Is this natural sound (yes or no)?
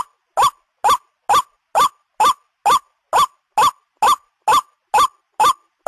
yes